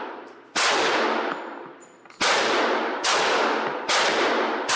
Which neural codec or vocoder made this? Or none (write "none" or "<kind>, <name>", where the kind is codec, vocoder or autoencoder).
none